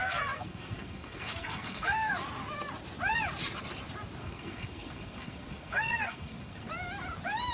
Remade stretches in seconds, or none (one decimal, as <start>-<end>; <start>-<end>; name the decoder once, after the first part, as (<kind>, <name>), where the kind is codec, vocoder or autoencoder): 0.0-2.1 (codec, SNAC); 4.2-6.7